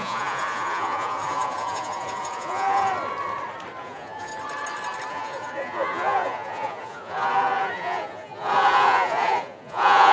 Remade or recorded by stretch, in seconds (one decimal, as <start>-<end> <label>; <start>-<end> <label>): 0.0-2.9 remade; 2.9-3.8 recorded; 3.8-4.3 remade; 4.3-5.1 recorded; 5.1-10.1 remade